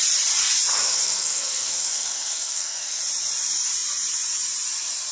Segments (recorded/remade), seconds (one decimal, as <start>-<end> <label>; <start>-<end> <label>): 0.0-0.7 recorded; 0.7-3.0 remade; 3.0-5.1 recorded